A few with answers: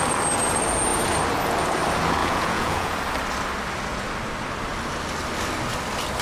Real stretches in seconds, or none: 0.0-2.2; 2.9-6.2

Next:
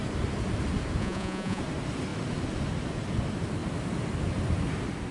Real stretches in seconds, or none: 0.0-1.0; 1.6-5.1

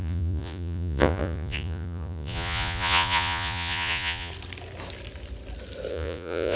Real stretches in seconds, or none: 4.3-5.9